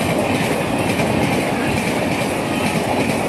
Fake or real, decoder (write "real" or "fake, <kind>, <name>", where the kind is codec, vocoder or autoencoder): real